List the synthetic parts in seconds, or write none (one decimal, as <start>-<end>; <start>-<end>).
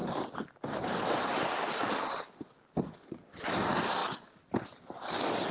none